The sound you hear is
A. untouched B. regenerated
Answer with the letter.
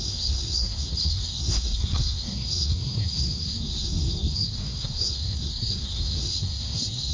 B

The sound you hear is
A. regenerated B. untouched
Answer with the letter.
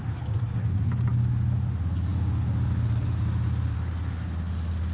B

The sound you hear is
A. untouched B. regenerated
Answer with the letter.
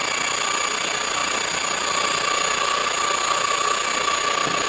A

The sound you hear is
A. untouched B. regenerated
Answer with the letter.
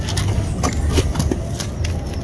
A